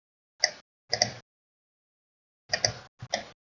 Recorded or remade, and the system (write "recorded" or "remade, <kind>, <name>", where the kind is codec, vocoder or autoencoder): recorded